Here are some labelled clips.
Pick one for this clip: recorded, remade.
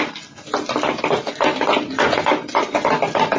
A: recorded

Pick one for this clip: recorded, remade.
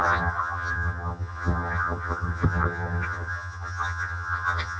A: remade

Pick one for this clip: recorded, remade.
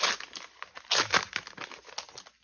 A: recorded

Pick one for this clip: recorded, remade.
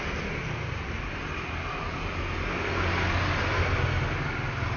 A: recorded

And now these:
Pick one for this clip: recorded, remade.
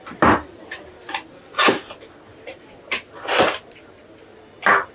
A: recorded